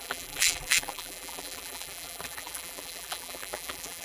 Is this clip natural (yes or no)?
no